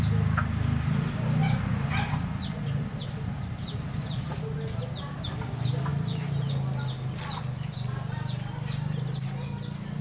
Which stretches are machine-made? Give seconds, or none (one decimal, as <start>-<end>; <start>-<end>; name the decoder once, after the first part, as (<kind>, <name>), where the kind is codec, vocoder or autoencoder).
1.4-2.4 (vocoder, BigVGAN v2); 5.9-6.5